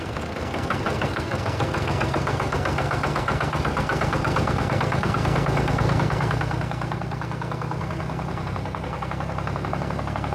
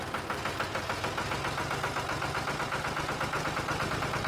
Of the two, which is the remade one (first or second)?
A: first